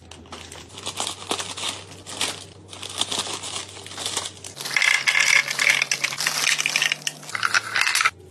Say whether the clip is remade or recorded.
recorded